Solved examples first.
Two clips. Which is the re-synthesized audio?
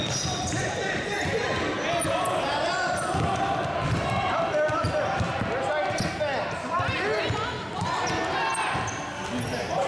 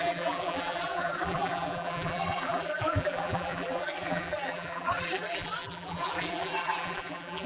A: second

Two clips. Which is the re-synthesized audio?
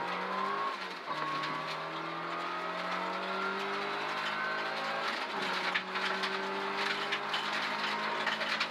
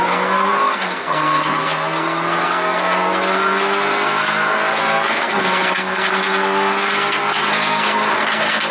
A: second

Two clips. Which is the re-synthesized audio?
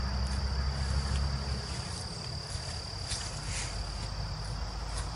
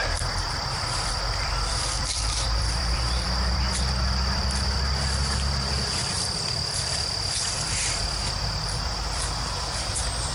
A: second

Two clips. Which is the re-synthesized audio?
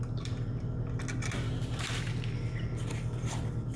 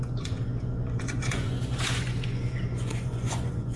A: second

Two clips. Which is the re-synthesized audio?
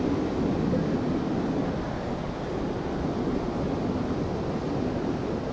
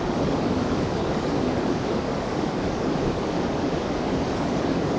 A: second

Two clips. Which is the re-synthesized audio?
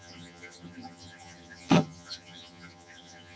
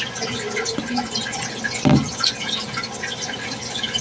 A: first